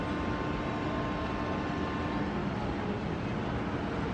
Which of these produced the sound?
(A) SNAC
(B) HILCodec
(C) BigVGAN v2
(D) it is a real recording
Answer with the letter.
D